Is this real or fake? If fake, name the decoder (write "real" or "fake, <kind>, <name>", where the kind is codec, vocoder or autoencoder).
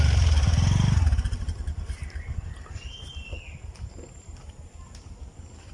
real